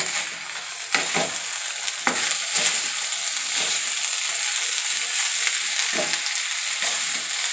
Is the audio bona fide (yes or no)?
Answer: yes